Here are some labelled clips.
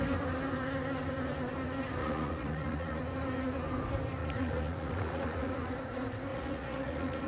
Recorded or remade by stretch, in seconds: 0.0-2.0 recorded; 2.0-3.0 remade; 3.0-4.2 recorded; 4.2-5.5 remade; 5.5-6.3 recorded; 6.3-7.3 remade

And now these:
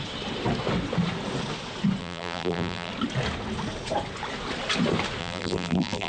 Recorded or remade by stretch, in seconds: 0.0-2.0 recorded; 2.0-2.9 remade; 2.9-5.2 recorded; 5.2-6.1 remade

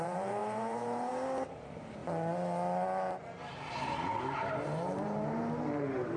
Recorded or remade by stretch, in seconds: 0.0-2.0 remade; 2.0-4.0 recorded; 4.0-6.2 remade

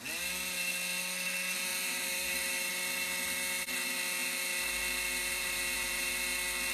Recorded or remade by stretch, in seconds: 0.0-1.7 recorded; 1.7-2.7 remade; 2.7-5.2 recorded; 5.2-6.1 remade; 6.1-6.7 recorded